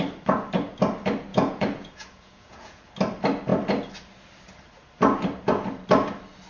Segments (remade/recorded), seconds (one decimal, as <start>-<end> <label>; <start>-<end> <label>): 0.0-1.3 recorded; 1.3-2.9 remade; 2.9-6.5 recorded